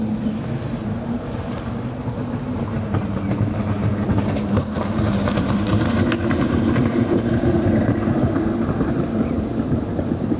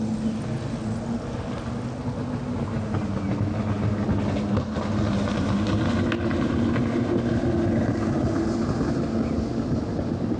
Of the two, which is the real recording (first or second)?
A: second